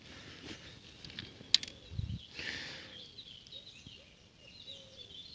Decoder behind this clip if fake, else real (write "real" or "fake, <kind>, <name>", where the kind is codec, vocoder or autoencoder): real